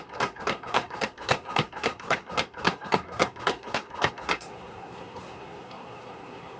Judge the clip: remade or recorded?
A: remade